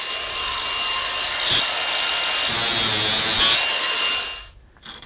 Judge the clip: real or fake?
real